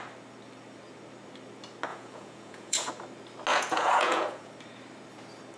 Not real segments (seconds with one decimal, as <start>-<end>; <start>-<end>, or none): 1.9-2.9; 3.5-4.5